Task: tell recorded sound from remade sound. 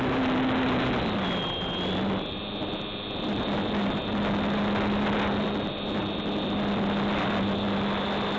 recorded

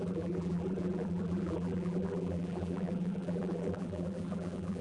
remade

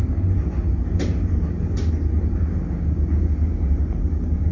recorded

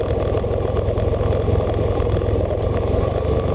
recorded